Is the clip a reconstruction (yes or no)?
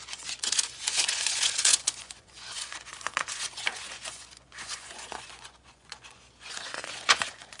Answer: yes